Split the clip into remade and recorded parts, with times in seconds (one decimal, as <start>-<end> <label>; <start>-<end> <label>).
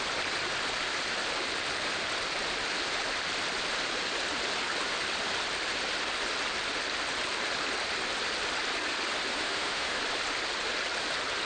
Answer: 0.0-9.3 recorded; 9.3-10.0 remade; 10.0-11.4 recorded